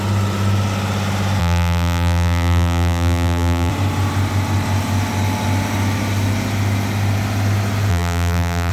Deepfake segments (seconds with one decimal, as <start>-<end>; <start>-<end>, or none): 1.4-3.7; 7.9-8.7